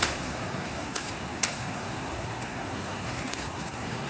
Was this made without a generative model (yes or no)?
no